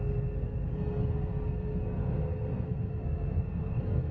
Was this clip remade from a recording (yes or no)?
yes